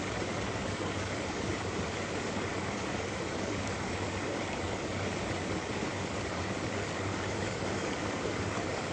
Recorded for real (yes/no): no